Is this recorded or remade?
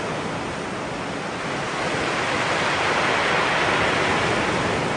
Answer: recorded